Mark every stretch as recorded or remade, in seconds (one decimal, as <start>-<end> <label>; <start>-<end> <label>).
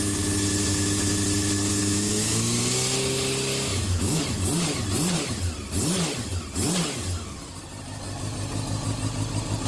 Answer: 0.0-1.8 recorded; 1.8-2.6 remade; 2.6-3.7 recorded; 3.7-4.2 remade; 4.2-9.7 recorded